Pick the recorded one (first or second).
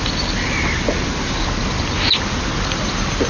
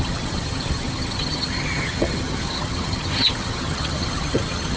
first